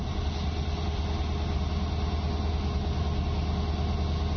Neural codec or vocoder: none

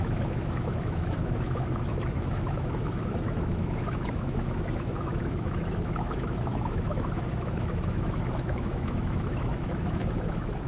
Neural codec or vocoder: autoencoder, DAC-VAE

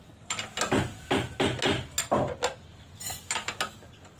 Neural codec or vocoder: none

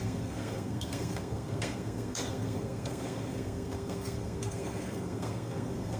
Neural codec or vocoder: codec, SNAC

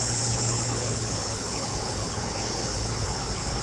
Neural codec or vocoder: codec, HILCodec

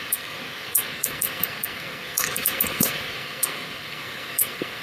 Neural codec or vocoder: codec, SNAC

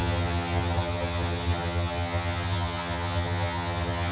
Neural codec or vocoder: vocoder, HiFi-GAN